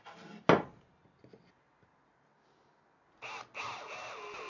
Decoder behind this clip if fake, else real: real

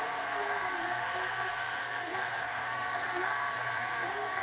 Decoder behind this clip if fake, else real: fake, codec, SNAC